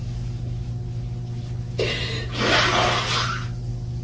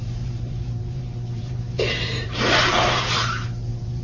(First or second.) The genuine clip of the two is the first